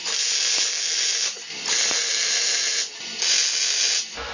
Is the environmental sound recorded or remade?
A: recorded